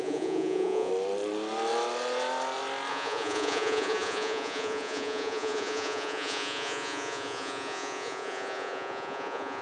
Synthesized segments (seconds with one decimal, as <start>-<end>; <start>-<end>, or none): 0.0-0.9; 2.9-9.6